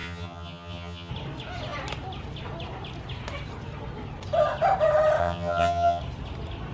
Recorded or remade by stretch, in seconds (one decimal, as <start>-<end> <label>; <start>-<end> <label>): 0.0-1.1 remade; 1.1-5.2 recorded; 5.2-6.0 remade; 6.0-6.7 recorded